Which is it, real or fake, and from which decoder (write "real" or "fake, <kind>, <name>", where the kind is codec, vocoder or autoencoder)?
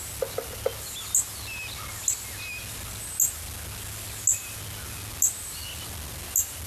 real